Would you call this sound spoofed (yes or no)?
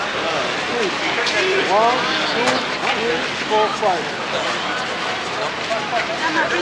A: no